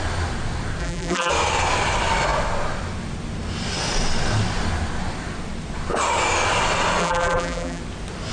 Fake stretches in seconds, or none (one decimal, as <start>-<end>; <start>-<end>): 0.8-1.3; 7.0-7.8